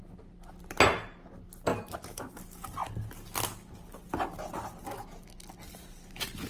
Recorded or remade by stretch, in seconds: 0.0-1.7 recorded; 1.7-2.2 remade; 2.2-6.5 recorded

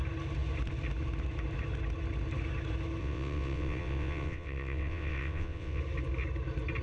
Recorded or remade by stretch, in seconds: 0.0-3.0 recorded; 3.0-5.8 remade; 5.8-6.8 recorded

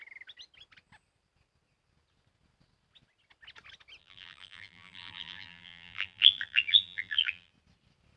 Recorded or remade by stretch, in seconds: 0.0-4.0 recorded; 4.0-7.5 remade; 7.5-8.2 recorded

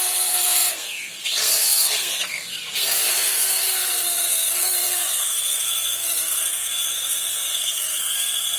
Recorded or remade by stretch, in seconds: 0.0-8.6 remade

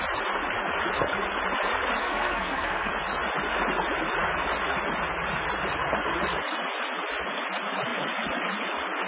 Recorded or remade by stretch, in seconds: 0.0-2.0 recorded; 2.0-2.9 remade; 2.9-9.1 recorded

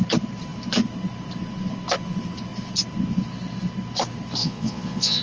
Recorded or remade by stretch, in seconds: 0.0-4.4 recorded; 4.4-5.2 remade